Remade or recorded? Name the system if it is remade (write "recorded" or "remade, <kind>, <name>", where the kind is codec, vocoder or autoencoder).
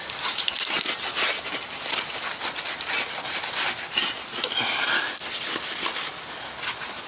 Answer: recorded